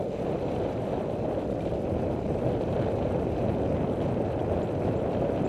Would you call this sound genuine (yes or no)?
yes